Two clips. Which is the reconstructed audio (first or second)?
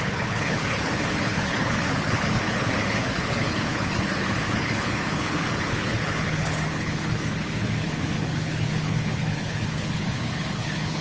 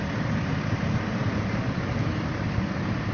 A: first